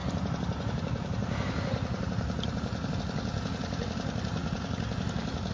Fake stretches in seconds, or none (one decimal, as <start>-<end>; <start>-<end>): 0.0-3.0

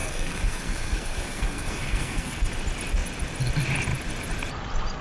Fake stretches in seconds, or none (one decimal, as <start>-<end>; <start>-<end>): 0.0-2.4